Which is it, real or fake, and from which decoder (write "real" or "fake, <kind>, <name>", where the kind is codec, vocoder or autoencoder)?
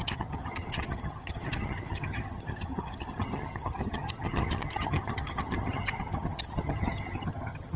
fake, vocoder, HiFi-GAN